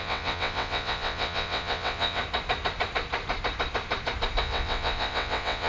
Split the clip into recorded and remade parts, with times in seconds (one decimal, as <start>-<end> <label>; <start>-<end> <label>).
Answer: 0.0-2.2 remade; 2.2-4.4 recorded; 4.4-5.7 remade